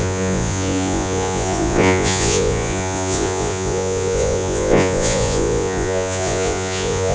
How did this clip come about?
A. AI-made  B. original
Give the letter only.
A